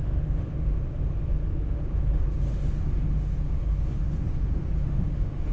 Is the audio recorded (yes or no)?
no